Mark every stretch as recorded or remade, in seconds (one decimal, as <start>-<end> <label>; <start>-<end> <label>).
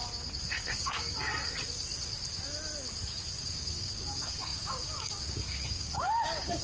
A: 0.0-0.7 recorded; 0.7-1.3 remade; 1.3-3.4 recorded; 3.4-6.6 remade